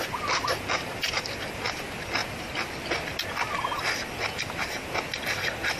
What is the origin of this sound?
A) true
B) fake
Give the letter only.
A